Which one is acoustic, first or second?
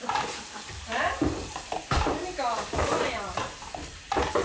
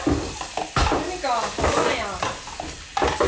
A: second